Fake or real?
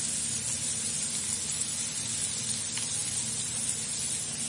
real